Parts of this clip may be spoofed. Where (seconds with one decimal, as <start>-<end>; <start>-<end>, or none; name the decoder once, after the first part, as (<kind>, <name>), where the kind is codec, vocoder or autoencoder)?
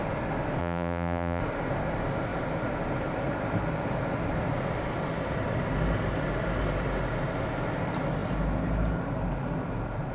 0.6-1.4 (vocoder, BigVGAN v2)